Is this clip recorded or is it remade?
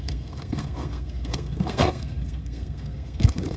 remade